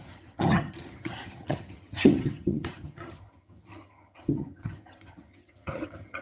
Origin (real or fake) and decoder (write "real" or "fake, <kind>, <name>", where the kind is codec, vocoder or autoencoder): fake, vocoder, HiFi-GAN